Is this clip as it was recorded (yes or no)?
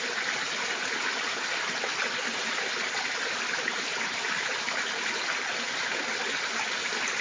yes